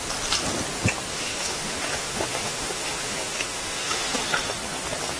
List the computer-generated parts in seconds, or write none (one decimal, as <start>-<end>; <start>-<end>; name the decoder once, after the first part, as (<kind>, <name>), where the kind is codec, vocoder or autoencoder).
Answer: 1.1-4.2 (autoencoder, DAC-VAE)